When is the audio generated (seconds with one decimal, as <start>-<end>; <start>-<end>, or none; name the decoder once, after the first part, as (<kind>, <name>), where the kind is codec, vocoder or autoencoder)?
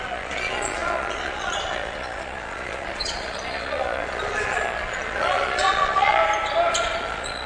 0.0-6.2 (vocoder, Vocos); 6.8-7.5